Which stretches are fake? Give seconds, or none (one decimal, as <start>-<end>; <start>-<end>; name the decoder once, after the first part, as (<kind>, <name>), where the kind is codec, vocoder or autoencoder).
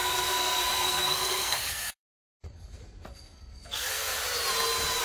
0.0-4.1 (codec, SNAC)